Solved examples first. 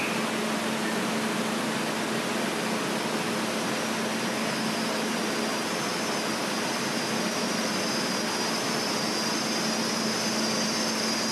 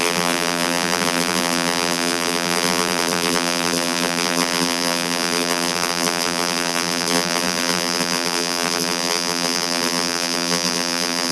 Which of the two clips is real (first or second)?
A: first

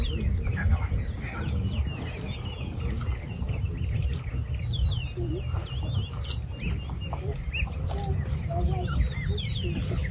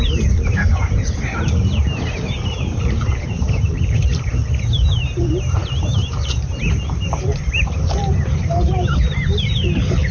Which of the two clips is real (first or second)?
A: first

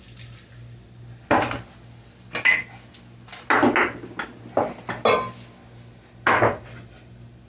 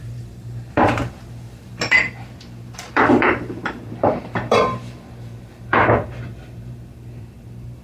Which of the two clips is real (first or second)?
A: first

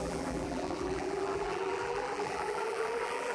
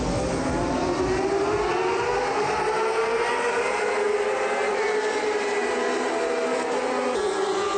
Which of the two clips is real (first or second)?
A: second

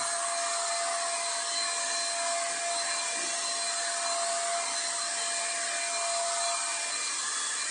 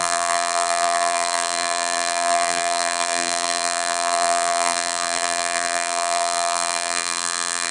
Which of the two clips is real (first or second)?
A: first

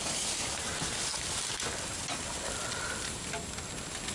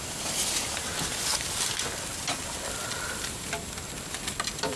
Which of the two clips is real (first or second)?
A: first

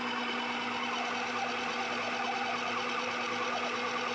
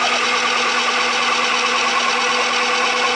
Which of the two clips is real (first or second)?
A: second